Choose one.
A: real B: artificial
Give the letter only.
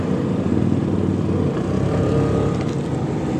A